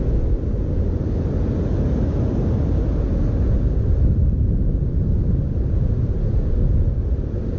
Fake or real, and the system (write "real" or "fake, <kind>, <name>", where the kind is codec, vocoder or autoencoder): real